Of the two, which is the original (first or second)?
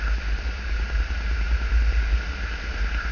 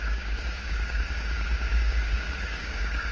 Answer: first